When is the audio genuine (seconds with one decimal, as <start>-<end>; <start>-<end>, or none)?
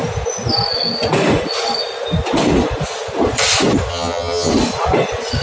0.0-3.9; 4.5-5.4